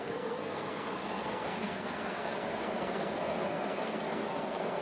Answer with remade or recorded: remade